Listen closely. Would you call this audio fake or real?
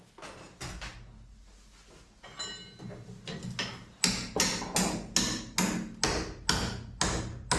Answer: real